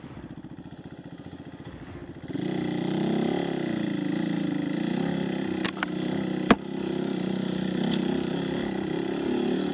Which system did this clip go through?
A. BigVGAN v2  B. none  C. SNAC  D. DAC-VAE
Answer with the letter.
B